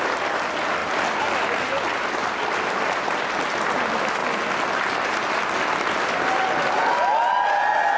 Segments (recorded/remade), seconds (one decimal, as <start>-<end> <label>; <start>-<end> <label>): 0.0-8.0 recorded